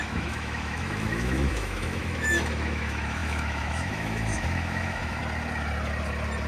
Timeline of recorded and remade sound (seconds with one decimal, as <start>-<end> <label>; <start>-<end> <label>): 0.0-5.2 remade; 5.2-6.5 recorded